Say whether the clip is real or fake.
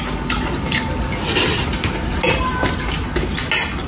real